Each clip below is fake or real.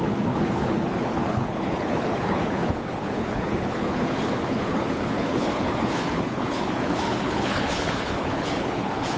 fake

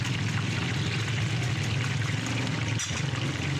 real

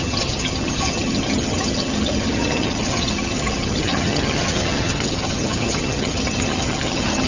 fake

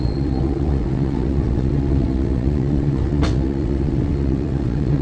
fake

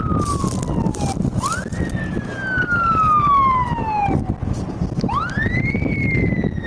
real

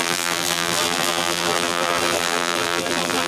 fake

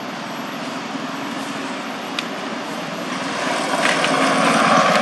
real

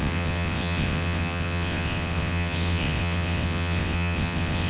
fake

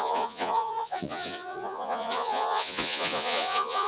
fake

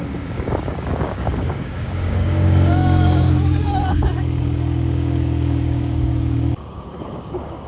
fake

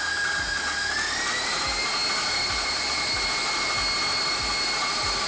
real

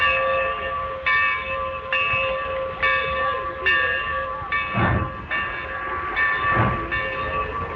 real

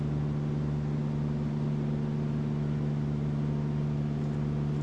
real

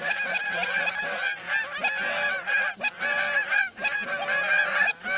real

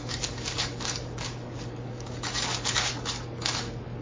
fake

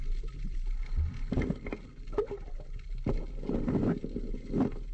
real